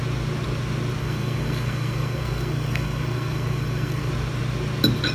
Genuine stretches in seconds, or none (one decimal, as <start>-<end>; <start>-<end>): 0.0-1.0; 4.1-5.1

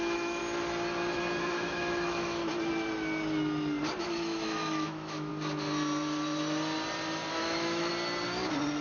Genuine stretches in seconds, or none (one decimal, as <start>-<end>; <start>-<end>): 0.4-1.4; 2.4-4.0; 5.3-7.3; 7.9-8.8